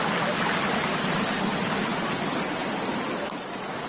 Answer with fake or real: real